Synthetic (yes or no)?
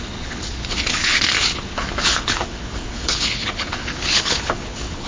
yes